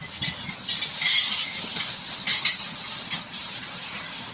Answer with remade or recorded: recorded